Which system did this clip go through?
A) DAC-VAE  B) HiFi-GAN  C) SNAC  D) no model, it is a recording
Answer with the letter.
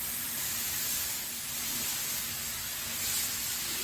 D